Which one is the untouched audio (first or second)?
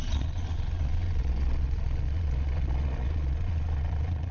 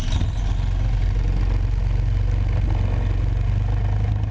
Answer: second